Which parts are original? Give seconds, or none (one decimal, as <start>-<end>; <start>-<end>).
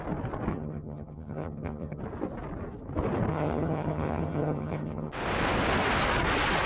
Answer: 0.0-0.5; 2.0-3.3; 5.1-6.7